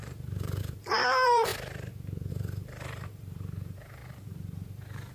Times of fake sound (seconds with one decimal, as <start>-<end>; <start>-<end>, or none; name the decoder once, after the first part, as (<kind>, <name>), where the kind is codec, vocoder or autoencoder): 0.0-1.5 (vocoder, BigVGAN v2); 2.3-4.0